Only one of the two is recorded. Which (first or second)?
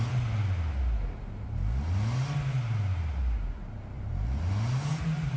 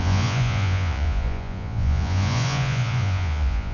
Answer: first